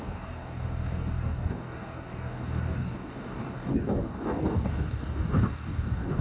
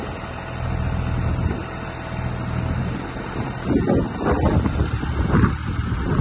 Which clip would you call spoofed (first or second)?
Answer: first